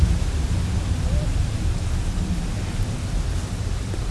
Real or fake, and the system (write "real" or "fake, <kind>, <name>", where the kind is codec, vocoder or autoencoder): real